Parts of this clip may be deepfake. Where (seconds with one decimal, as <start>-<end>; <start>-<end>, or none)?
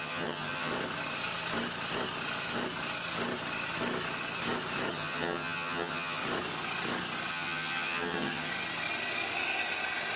0.0-0.7; 4.9-6.2; 7.3-8.5